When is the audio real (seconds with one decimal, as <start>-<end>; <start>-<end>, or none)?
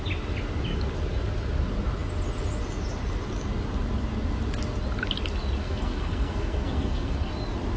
0.0-5.6; 7.3-7.8